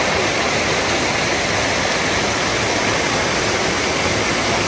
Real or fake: real